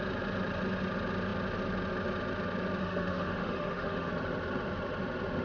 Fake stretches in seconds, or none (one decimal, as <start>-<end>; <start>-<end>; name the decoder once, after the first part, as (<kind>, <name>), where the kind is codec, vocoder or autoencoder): 2.8-4.1 (autoencoder, DAC-VAE)